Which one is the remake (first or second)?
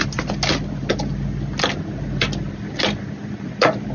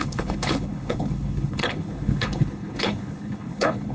second